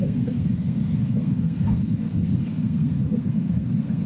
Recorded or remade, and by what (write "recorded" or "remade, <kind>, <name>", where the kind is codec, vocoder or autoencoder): remade, codec, SNAC